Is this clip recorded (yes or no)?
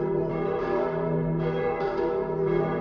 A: no